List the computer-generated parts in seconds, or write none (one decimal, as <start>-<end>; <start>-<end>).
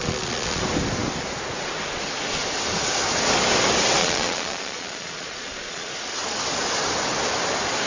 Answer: 0.0-0.6; 4.0-5.9